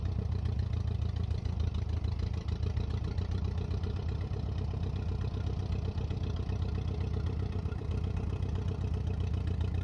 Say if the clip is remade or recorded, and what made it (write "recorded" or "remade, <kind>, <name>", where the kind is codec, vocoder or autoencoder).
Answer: recorded